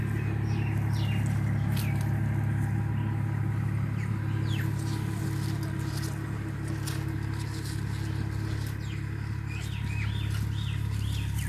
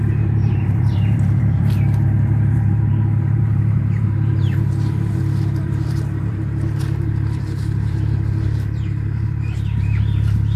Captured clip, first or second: first